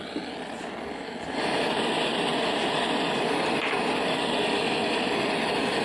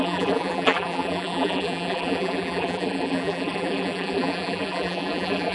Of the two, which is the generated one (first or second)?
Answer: second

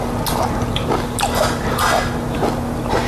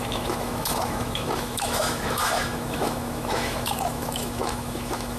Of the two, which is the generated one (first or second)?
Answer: second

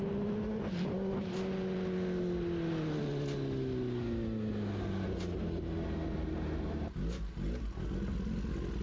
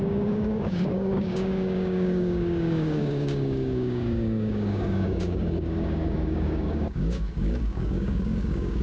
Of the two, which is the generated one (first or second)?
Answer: second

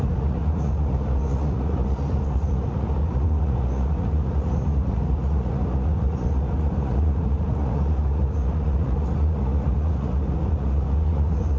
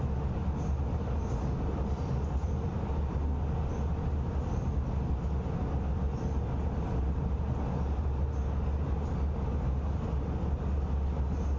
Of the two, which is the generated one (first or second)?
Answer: first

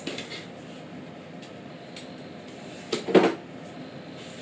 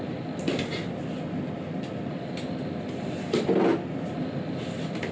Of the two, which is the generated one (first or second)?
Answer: second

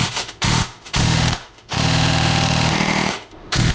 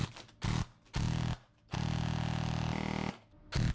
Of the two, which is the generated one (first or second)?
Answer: first